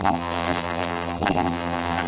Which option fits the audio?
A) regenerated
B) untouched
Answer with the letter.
A